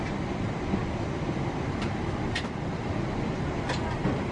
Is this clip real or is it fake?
real